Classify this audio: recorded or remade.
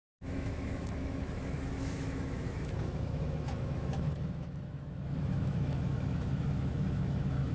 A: remade